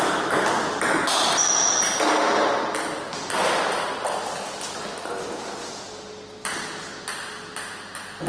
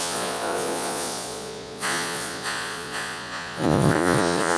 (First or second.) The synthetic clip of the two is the second